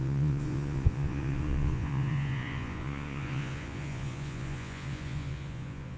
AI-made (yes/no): yes